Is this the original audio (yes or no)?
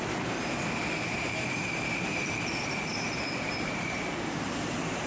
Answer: no